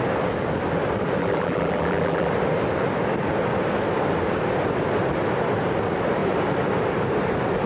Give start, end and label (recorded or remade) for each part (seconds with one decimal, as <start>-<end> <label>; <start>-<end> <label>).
0.0-1.2 recorded; 1.2-2.3 remade; 2.3-7.7 recorded

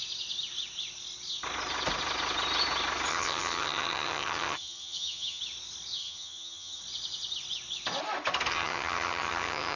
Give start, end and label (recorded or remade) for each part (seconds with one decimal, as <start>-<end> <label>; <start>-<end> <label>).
0.0-3.1 recorded; 3.1-5.4 remade; 5.4-6.0 recorded; 6.0-6.8 remade; 6.8-8.5 recorded; 8.5-9.8 remade

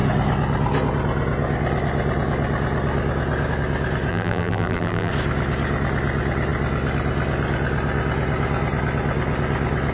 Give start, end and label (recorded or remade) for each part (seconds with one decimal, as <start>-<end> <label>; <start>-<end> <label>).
0.0-4.1 recorded; 4.1-5.1 remade; 5.1-9.9 recorded

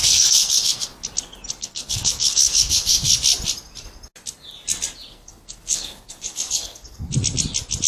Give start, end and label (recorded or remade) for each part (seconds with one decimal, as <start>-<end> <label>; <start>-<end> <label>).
0.0-0.9 remade; 0.9-1.6 recorded; 1.6-3.1 remade; 3.1-5.1 recorded; 5.1-7.1 remade; 7.1-7.9 recorded

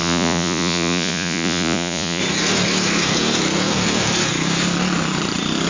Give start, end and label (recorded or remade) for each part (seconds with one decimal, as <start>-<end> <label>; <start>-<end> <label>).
0.0-2.2 remade; 2.2-5.7 recorded

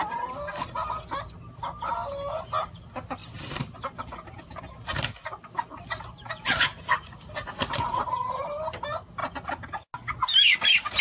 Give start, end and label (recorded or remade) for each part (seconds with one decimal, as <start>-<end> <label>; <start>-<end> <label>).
0.0-6.7 recorded; 6.7-8.4 remade; 8.4-11.0 recorded

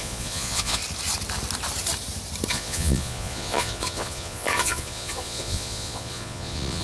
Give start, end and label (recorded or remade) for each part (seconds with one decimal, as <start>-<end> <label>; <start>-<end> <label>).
0.0-0.8 remade; 0.8-2.5 recorded; 2.5-6.8 remade

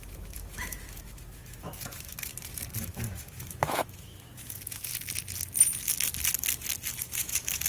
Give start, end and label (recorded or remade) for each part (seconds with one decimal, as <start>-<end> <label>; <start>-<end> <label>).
0.0-2.3 remade; 2.3-2.8 recorded; 2.8-4.9 remade; 4.9-7.0 recorded; 7.0-7.7 remade